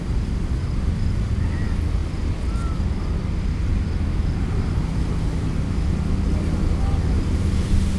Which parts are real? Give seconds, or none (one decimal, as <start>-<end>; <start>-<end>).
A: 0.0-8.0